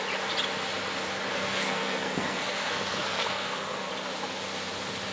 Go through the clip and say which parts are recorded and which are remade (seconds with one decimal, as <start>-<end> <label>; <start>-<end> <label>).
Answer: 0.0-1.3 recorded; 1.3-3.9 remade; 3.9-5.1 recorded

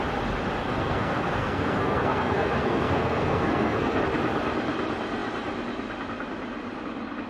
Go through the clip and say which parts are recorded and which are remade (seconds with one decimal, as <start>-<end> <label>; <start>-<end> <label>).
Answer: 0.0-0.6 recorded; 0.6-4.0 remade; 4.0-7.3 recorded

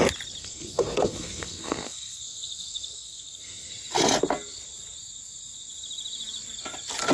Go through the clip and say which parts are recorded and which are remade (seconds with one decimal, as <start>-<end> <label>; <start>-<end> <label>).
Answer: 0.0-0.4 recorded; 0.4-3.7 remade; 3.7-7.1 recorded